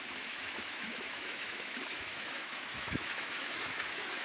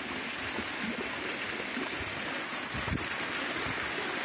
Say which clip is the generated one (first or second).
first